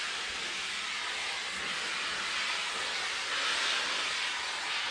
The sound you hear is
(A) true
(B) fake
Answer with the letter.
A